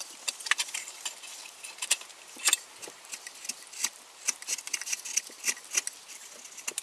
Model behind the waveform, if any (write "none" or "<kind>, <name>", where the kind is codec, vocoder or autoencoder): none